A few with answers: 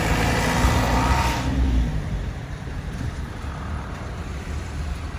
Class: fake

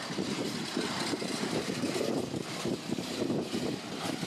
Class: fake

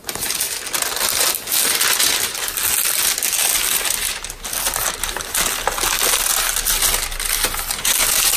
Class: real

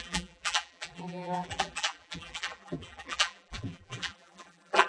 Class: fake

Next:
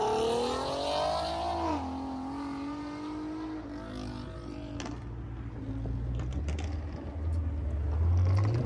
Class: real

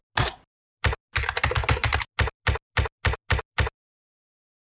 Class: real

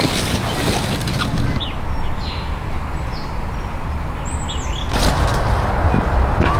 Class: real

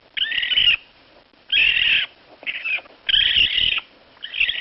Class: real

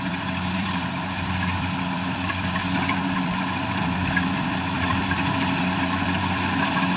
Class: fake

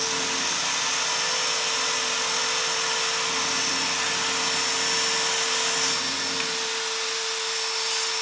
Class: real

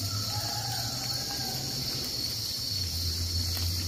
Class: real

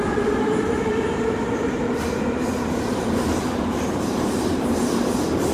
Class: fake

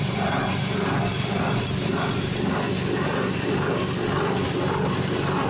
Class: real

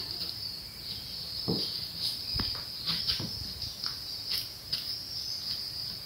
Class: real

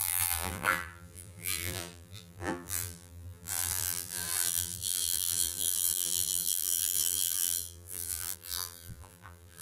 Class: fake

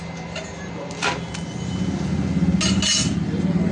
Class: real